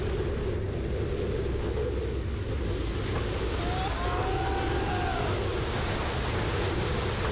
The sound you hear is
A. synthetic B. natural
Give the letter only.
B